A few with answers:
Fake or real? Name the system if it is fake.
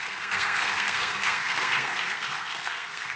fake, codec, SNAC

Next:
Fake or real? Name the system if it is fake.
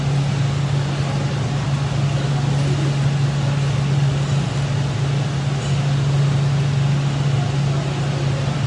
real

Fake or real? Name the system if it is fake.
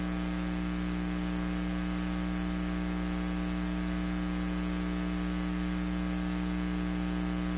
real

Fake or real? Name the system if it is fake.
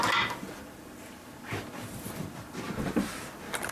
real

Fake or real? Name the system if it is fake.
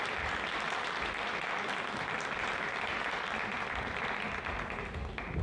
real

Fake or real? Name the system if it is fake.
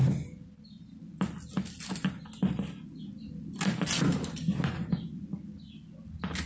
real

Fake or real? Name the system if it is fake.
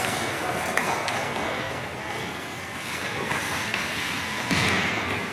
fake, codec, SNAC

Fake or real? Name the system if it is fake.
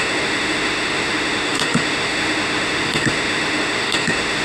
fake, autoencoder, DAC-VAE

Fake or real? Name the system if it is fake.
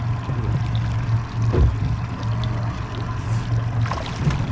real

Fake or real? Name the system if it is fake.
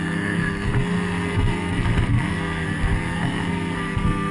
fake, codec, SNAC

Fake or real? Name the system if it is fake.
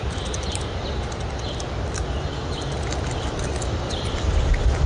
real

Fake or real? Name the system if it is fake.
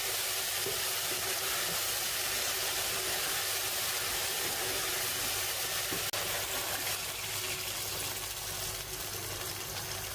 real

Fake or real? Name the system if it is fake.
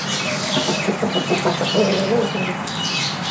real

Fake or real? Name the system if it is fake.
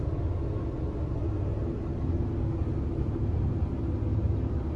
real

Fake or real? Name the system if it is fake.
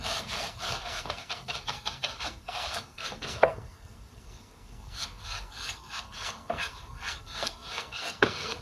fake, codec, SNAC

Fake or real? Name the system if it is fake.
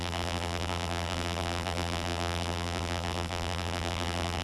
fake, vocoder, BigVGAN v2